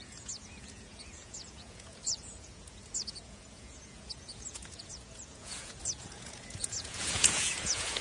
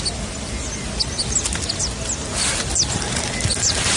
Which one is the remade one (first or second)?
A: first